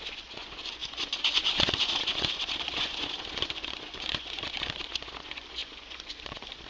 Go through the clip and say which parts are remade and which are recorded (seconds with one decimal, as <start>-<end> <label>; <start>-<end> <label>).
0.0-6.7 remade